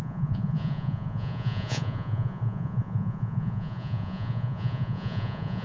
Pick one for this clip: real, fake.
fake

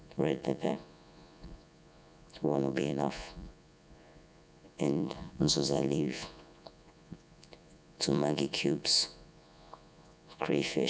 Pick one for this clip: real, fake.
fake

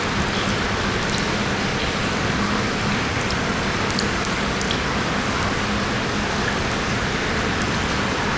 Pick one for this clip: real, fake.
real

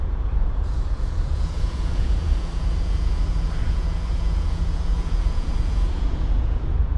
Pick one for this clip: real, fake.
fake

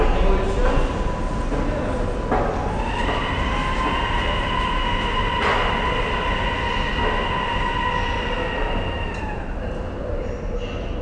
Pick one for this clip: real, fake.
real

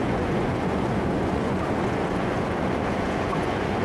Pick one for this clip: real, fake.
fake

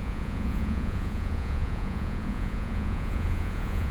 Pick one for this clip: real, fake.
fake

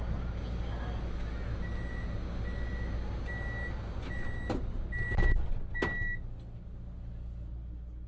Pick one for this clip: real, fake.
real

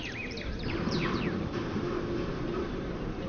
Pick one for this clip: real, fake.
real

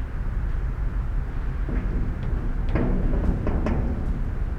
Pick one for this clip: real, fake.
real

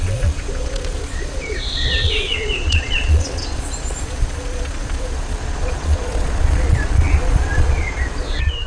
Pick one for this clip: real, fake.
fake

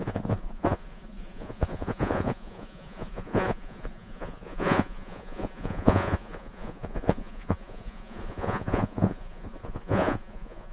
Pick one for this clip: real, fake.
fake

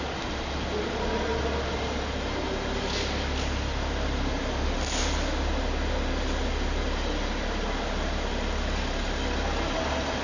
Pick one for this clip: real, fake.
real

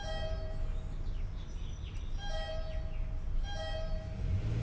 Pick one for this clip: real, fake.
real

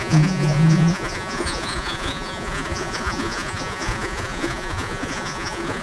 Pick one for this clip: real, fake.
fake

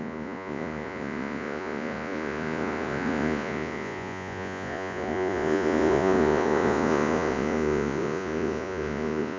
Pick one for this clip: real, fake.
fake